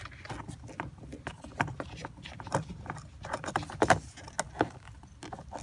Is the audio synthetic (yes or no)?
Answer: no